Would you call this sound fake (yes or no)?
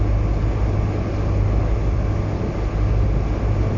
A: no